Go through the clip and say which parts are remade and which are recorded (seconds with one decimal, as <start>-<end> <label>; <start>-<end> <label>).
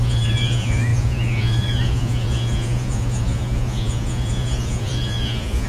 0.0-5.7 remade